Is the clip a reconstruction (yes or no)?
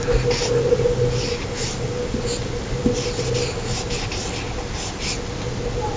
no